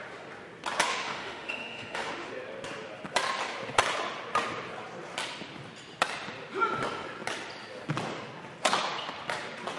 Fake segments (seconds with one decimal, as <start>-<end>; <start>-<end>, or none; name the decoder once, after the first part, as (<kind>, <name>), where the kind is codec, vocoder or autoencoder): 0.8-2.3 (autoencoder, DAC-VAE)